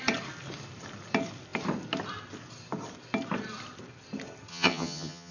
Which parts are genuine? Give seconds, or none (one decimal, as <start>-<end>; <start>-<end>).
0.0-4.5